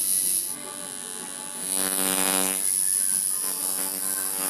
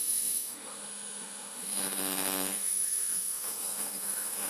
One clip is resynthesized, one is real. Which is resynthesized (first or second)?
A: second